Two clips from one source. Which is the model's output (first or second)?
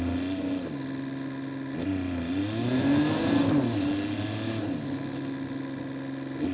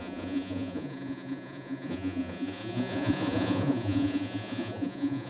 second